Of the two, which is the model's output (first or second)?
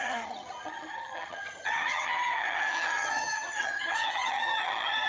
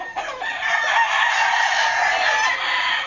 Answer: first